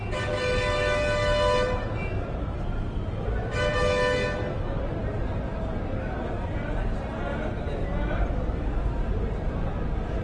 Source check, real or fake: real